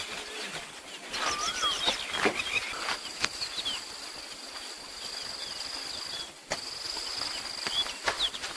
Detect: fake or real real